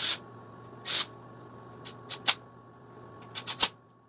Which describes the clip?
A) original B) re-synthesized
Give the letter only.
A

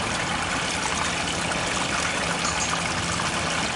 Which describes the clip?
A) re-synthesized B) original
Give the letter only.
B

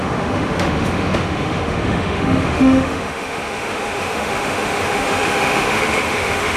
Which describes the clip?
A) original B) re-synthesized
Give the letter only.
B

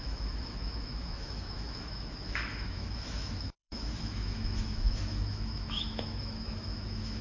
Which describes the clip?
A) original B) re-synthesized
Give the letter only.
B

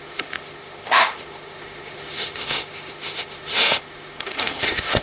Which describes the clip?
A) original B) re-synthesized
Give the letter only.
B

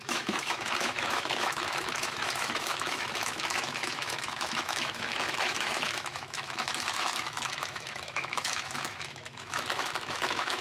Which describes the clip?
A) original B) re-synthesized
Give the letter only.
B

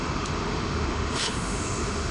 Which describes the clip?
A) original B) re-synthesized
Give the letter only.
B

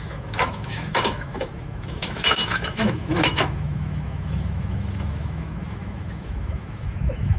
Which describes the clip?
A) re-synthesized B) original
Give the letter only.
A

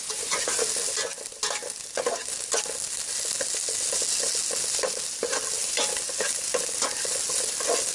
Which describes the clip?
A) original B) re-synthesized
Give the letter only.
A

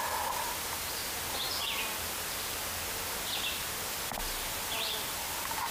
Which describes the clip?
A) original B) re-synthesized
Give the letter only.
A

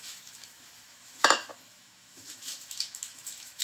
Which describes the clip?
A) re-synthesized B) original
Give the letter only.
A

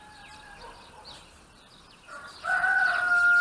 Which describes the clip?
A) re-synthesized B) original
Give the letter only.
B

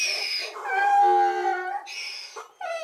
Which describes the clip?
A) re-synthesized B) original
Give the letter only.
B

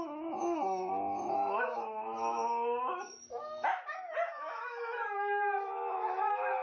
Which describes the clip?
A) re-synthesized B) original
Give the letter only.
A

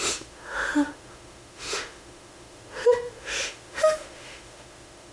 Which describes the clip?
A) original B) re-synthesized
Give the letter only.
B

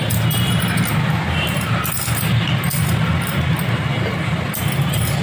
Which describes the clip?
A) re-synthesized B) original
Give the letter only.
B